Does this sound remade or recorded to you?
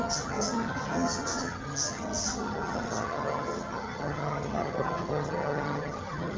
remade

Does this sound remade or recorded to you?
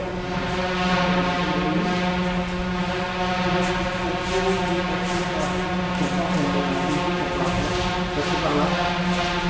recorded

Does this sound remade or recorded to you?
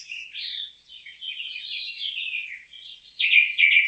remade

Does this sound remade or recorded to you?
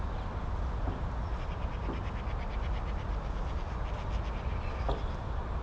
recorded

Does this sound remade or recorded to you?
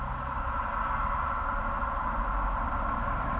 recorded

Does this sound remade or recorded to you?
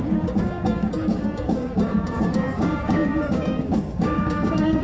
remade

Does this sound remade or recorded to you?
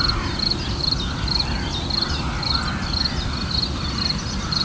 recorded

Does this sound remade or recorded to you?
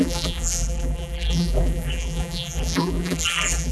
remade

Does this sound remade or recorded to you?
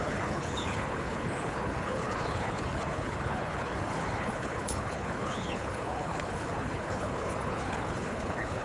remade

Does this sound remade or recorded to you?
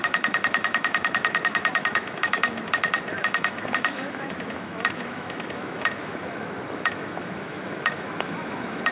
remade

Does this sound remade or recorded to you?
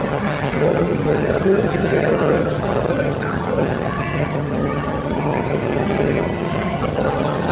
remade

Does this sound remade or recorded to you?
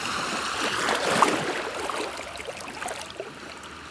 recorded